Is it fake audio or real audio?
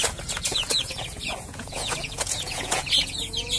fake